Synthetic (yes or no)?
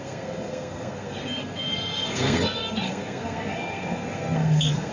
yes